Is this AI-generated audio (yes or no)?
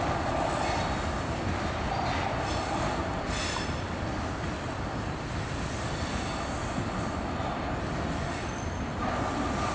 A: no